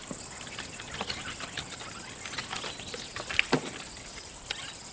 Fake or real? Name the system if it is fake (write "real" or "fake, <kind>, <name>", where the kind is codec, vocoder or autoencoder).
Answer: real